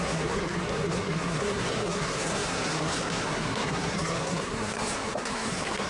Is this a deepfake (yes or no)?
yes